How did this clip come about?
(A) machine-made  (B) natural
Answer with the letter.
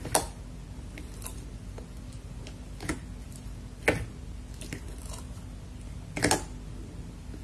B